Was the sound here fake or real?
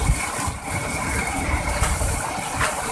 fake